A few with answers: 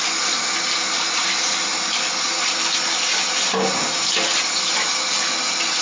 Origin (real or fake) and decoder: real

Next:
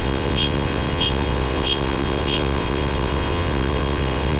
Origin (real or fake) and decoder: fake, vocoder, WaveNeXt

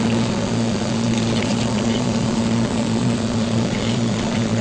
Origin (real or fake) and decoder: fake, vocoder, Vocos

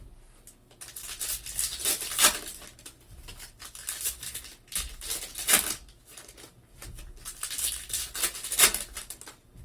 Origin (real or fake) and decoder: real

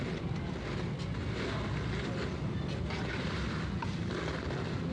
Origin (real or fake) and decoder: real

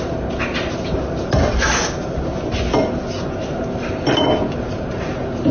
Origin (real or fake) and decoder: real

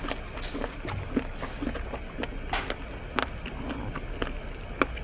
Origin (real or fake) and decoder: real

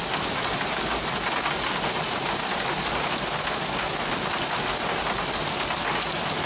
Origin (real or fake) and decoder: real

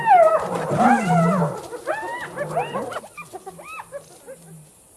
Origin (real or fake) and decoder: real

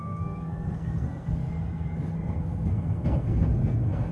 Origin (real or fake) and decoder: fake, codec, SNAC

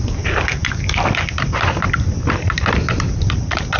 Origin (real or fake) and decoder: real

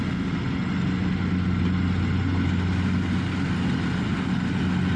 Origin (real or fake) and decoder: real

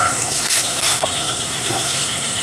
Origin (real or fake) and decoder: fake, codec, SNAC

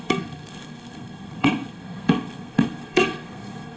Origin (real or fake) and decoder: fake, codec, SNAC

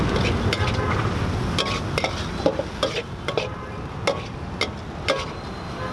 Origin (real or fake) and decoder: real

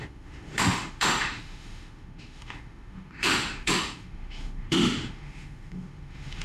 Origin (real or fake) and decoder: fake, autoencoder, DAC-VAE